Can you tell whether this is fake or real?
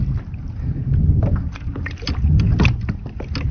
real